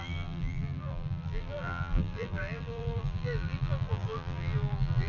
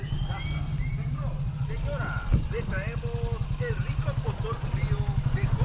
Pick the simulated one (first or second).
first